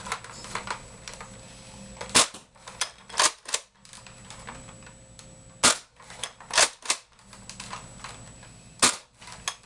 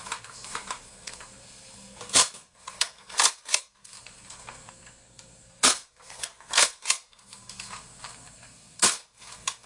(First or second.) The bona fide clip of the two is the first